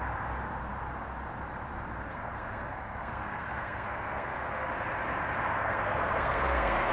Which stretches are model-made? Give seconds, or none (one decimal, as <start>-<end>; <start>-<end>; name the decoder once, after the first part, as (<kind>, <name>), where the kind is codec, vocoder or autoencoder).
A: 2.1-4.7 (codec, SNAC); 5.5-6.9